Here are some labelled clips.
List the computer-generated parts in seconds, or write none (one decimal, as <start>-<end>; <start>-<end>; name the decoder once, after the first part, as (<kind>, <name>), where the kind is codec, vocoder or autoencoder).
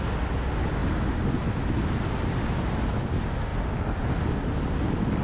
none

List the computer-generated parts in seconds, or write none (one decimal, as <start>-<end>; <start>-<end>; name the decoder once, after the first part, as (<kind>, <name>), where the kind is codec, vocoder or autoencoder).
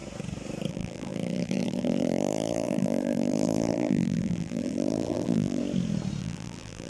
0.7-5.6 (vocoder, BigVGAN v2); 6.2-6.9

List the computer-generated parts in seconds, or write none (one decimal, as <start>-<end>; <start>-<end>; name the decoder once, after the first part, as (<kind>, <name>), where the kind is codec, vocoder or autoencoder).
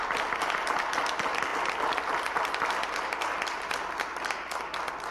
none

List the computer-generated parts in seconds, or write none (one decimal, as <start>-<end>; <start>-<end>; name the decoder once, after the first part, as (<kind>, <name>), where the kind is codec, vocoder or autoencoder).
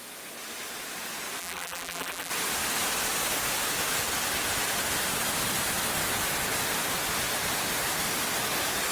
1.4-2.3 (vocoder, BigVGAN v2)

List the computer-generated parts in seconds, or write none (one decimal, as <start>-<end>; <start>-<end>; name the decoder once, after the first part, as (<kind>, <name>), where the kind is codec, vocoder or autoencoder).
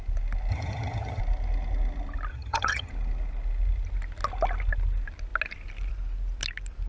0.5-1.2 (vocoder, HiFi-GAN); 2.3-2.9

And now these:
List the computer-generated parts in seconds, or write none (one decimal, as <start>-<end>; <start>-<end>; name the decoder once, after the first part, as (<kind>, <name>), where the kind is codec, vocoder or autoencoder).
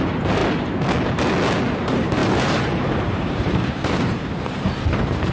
0.0-0.4 (vocoder, BigVGAN v2); 1.7-5.3